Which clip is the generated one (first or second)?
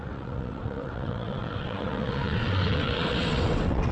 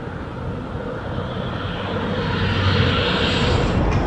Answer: first